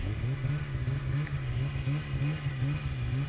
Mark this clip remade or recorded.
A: recorded